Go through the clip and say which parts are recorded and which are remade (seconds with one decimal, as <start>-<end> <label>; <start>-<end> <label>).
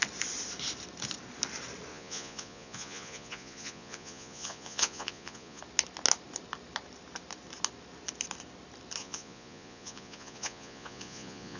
0.0-1.9 recorded; 1.9-5.6 remade; 5.6-9.0 recorded; 9.0-11.6 remade